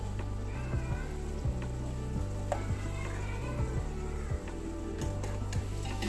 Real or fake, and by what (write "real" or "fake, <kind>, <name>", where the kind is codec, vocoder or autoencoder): real